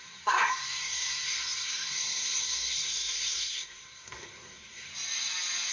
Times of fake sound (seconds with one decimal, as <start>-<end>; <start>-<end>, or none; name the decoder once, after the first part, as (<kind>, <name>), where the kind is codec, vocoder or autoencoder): 0.0-4.9 (codec, SNAC)